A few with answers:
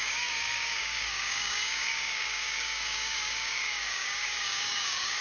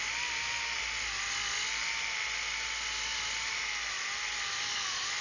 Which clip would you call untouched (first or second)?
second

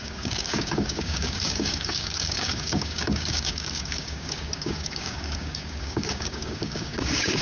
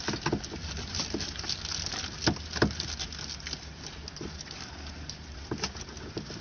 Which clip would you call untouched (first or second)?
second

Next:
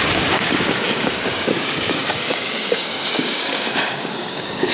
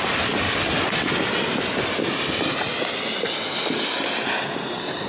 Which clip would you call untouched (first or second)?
second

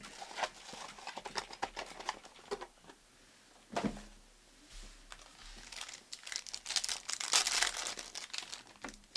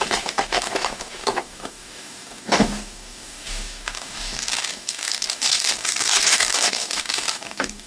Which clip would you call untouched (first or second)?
first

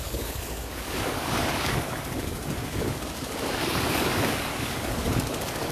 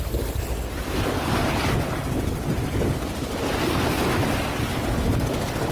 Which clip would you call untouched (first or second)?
second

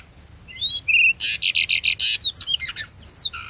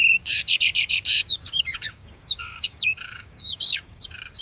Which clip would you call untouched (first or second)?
first